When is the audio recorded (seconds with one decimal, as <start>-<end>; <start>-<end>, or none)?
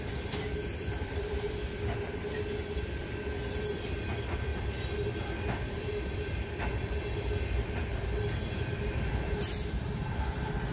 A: 4.5-5.6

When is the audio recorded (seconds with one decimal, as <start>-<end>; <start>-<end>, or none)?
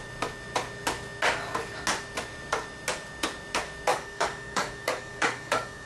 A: 0.0-3.9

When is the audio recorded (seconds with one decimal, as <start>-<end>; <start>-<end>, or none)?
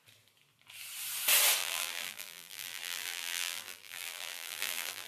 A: 0.0-1.6